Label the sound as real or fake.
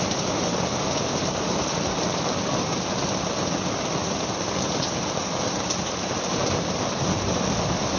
real